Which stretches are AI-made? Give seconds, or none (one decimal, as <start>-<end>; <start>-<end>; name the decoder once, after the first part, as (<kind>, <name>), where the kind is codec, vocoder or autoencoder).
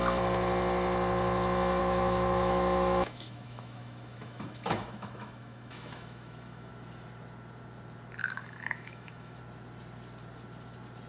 1.8-6.7 (autoencoder, DAC-VAE); 8.2-9.4